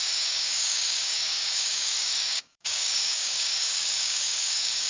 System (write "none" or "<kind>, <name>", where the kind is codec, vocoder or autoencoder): codec, DAC